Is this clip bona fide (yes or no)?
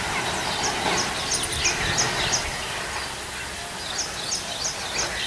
yes